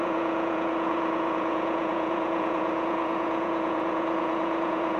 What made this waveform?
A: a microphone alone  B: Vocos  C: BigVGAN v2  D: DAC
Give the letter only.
B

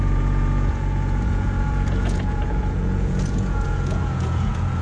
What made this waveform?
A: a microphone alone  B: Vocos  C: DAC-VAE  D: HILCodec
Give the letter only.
B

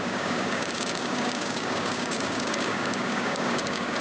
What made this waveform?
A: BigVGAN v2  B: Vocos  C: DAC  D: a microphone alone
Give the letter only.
C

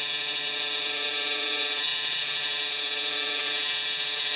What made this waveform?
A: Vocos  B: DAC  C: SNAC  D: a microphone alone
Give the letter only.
A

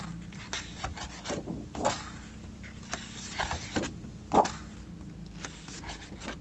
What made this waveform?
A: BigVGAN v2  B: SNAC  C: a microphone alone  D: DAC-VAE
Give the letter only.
C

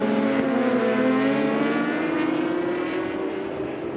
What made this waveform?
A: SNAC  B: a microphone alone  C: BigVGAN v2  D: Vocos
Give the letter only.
B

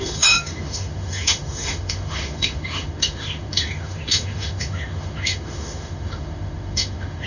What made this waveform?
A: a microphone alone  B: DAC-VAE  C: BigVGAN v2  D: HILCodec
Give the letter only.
B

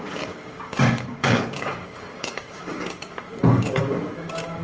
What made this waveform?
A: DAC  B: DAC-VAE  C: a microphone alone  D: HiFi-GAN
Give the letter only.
A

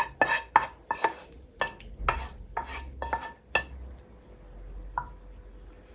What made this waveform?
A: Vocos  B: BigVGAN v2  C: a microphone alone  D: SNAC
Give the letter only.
C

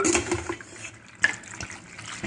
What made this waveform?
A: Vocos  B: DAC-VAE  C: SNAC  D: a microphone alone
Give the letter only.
D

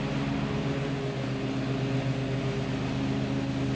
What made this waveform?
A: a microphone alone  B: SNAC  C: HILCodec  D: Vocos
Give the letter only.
A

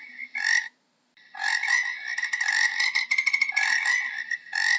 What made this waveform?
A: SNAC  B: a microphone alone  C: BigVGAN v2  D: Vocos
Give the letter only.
B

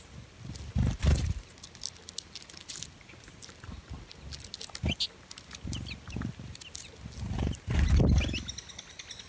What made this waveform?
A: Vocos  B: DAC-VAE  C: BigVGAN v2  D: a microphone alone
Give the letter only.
D